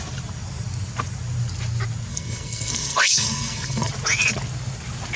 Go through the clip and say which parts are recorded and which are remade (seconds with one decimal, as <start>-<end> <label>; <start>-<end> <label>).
0.0-2.1 recorded; 2.1-3.9 remade; 3.9-5.2 recorded